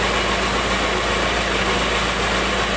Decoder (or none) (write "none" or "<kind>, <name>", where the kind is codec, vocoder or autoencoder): none